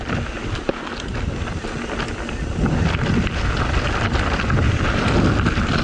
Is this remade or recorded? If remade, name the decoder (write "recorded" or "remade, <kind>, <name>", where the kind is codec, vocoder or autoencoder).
recorded